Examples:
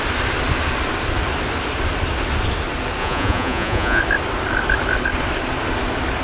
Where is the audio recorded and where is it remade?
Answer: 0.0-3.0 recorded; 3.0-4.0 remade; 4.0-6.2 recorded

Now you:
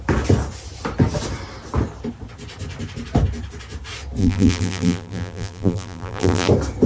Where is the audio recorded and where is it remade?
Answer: 0.0-4.2 recorded; 4.2-6.5 remade; 6.5-6.9 recorded

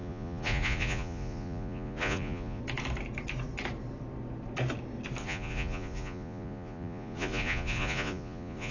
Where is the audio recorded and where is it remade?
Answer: 0.0-2.6 remade; 2.6-5.2 recorded; 5.2-8.7 remade

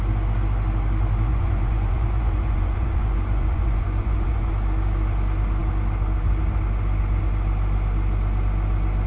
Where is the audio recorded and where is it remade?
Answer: 0.0-1.3 recorded; 1.3-4.5 remade; 4.5-9.1 recorded

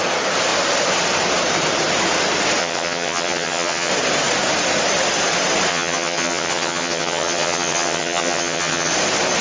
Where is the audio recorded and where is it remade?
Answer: 0.0-2.6 recorded; 2.6-3.9 remade; 3.9-5.7 recorded; 5.7-8.9 remade; 8.9-9.4 recorded

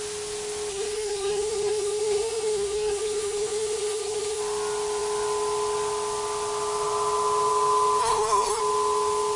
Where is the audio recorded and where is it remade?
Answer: 0.0-0.7 recorded; 0.7-4.4 remade; 4.4-8.0 recorded; 8.0-8.6 remade; 8.6-9.4 recorded

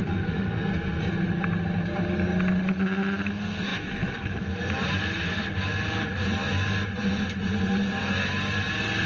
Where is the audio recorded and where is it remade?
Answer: 0.0-1.0 remade; 1.0-9.1 recorded

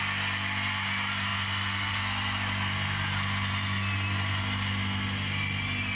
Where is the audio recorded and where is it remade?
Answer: 0.0-6.0 recorded